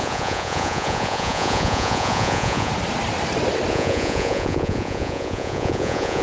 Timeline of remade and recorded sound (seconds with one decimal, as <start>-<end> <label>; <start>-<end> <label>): 0.0-2.7 remade; 2.7-3.7 recorded; 3.7-6.2 remade